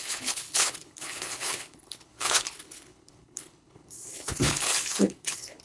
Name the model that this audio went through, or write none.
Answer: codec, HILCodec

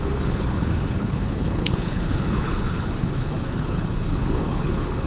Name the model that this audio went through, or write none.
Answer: codec, HILCodec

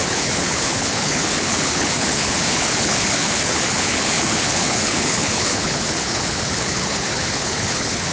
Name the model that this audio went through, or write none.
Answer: codec, HILCodec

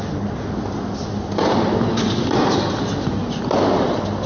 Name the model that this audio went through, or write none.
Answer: none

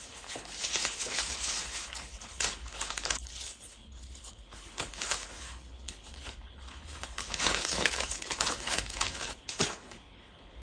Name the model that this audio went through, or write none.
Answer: codec, HILCodec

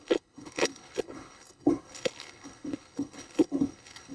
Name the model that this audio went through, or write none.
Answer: codec, HILCodec